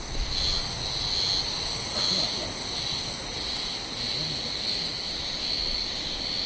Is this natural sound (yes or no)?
yes